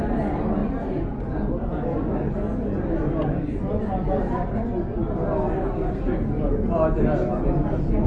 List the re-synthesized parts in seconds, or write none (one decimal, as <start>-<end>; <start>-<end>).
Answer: none